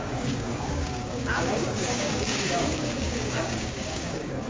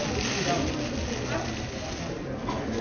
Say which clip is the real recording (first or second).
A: second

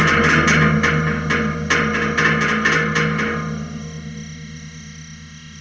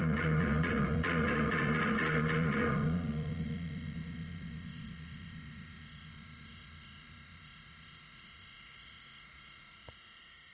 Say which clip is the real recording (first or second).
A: first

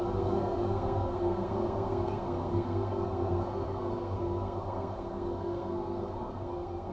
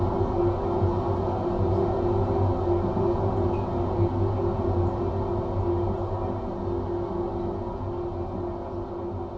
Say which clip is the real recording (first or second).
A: second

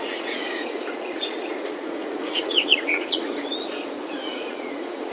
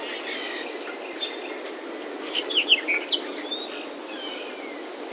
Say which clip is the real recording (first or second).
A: second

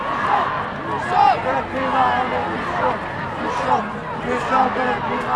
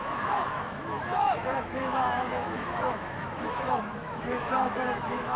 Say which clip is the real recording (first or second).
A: first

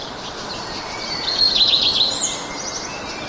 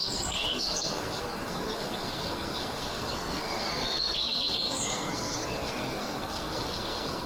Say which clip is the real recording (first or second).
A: first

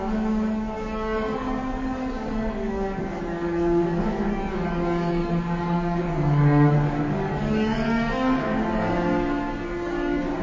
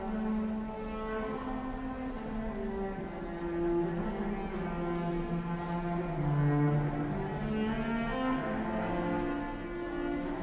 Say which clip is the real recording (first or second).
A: second